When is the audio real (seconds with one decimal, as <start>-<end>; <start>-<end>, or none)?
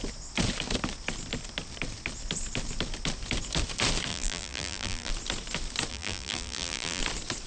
0.0-4.1; 5.1-5.9; 7.0-7.5